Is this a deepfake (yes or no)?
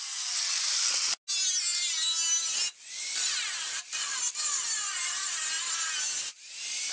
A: no